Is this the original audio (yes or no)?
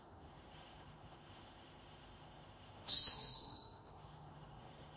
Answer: no